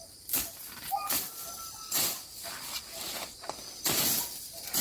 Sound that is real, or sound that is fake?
fake